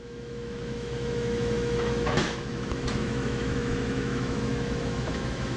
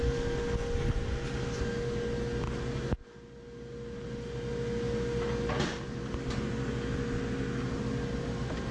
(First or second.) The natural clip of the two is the second